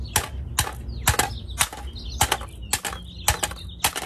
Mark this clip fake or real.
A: real